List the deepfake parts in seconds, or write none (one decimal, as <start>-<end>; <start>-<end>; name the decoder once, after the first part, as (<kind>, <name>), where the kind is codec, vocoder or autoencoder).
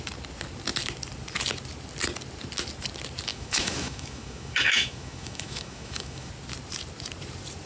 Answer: 3.3-6.3 (autoencoder, DAC-VAE)